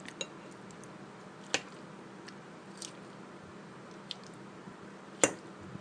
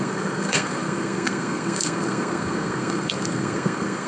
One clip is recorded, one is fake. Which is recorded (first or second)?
first